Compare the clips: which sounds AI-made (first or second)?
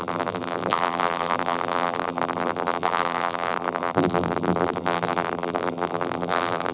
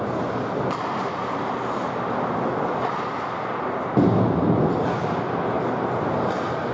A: first